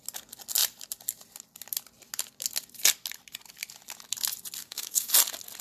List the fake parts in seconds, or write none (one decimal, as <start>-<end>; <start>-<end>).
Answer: 4.6-5.1

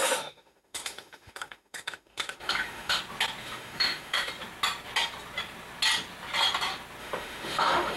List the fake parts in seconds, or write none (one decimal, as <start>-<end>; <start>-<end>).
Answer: 0.0-3.0; 3.4-4.3; 7.0-8.0

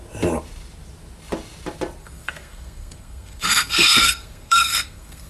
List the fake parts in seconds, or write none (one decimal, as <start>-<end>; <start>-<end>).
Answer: 2.0-5.3

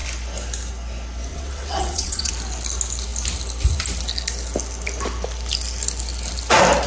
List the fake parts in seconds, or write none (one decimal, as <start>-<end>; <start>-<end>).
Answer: 1.3-2.3

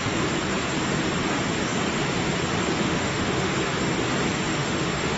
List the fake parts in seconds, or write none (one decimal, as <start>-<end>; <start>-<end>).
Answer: 2.8-3.5; 4.5-5.2

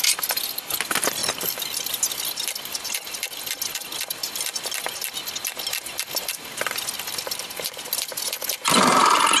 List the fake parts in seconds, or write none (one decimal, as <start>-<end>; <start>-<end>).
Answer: 1.2-2.1

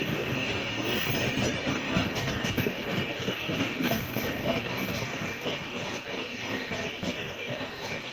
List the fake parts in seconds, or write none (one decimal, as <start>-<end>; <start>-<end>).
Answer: 0.0-1.1; 1.7-8.1